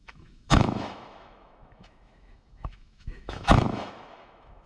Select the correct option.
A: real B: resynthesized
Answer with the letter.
B